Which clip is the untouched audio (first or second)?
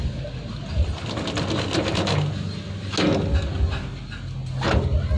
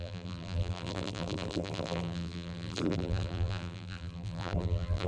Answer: first